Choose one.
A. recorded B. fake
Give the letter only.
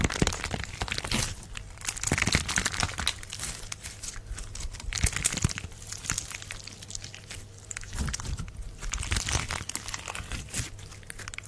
A